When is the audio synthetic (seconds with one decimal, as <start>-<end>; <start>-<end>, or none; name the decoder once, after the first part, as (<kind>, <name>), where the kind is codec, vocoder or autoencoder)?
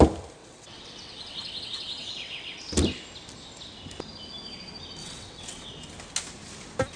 0.4-2.6 (vocoder, WaveNeXt); 5.0-5.7